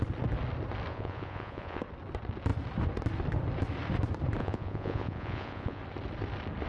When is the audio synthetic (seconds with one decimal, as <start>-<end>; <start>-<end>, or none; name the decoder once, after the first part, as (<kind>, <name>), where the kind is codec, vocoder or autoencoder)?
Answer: 0.9-1.8 (vocoder, Vocos); 4.4-5.8